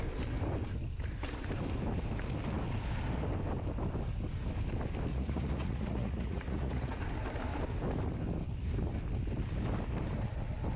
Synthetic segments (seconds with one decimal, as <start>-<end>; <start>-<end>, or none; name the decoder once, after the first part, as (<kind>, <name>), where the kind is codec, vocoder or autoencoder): 5.1-7.0 (vocoder, Vocos)

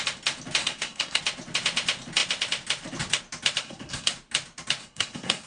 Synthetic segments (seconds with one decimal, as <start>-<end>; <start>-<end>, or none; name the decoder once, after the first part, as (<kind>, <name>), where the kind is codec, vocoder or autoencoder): 0.6-1.2 (codec, SNAC); 3.6-4.1; 4.8-5.5

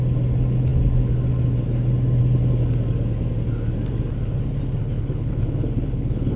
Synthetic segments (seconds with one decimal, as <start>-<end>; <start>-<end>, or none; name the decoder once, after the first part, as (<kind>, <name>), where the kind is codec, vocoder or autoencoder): 4.8-6.4 (codec, HILCodec)

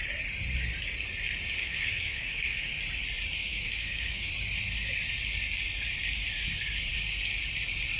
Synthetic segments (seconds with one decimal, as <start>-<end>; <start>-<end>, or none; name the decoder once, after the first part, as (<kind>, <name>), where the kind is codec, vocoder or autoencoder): 1.6-2.8 (autoencoder, DAC-VAE); 3.5-4.3

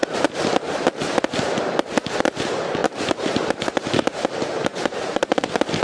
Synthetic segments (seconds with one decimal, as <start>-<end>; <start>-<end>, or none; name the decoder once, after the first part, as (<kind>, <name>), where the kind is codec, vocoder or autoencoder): 2.8-5.8 (vocoder, BigVGAN v2)

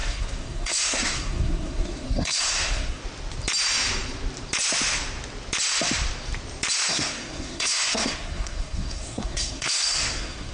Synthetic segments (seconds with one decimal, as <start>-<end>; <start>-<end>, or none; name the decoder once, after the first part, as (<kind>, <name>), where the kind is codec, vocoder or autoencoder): 0.0-3.0 (codec, SNAC); 6.9-10.5

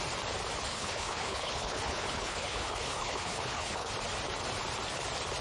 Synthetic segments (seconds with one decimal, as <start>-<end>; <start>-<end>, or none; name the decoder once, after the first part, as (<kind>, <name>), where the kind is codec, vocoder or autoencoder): 0.7-3.9 (codec, HILCodec)

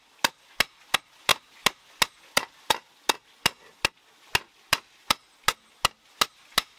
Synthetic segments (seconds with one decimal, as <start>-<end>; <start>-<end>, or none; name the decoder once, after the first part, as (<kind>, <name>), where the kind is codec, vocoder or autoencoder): none